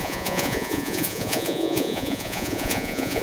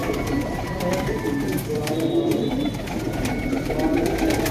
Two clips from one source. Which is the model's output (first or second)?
first